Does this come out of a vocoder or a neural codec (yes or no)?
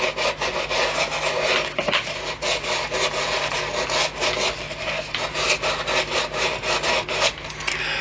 no